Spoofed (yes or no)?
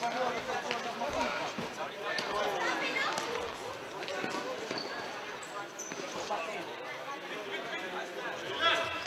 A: no